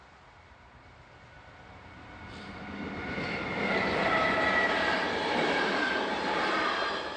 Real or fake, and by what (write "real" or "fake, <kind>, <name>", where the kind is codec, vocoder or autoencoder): real